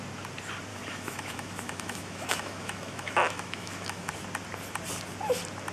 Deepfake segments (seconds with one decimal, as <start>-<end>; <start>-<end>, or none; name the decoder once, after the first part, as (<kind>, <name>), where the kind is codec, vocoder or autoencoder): 0.7-4.1 (autoencoder, DAC-VAE)